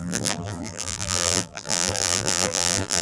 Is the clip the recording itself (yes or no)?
no